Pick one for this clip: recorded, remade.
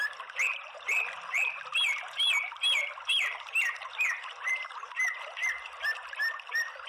remade